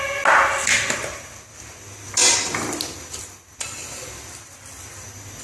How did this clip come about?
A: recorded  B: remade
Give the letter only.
A